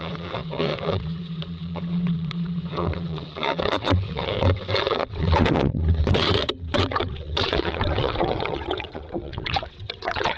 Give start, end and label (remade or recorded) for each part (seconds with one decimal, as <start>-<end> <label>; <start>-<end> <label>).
0.0-10.4 remade